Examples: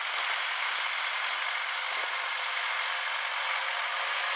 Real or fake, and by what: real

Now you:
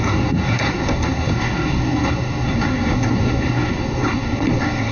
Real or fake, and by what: fake, codec, SNAC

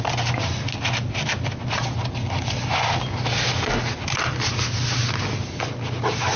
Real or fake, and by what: real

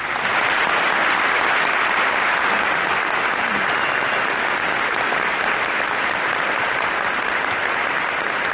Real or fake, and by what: real